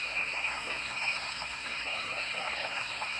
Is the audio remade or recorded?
remade